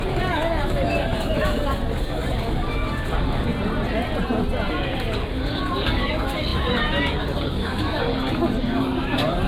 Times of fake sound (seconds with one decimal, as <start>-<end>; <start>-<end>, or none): 0.0-3.5; 4.7-9.5